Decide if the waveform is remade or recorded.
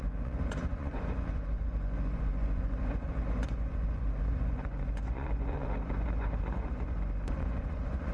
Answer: remade